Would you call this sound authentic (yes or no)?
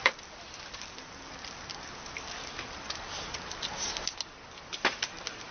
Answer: yes